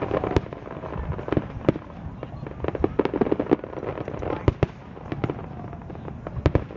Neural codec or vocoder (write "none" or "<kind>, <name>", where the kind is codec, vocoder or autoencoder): none